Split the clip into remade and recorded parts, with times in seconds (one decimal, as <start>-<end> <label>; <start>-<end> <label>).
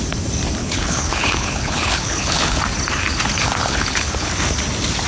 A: 0.0-0.6 recorded; 0.6-2.6 remade; 2.6-3.6 recorded; 3.6-4.3 remade; 4.3-5.1 recorded